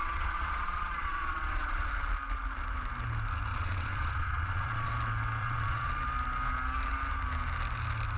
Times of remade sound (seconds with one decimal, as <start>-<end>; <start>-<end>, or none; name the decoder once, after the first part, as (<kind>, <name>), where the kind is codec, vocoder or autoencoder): 0.0-1.9 (vocoder, Vocos); 3.5-4.9; 5.4-5.9